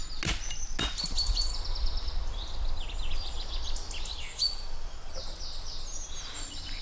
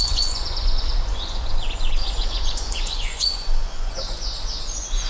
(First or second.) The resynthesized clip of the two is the second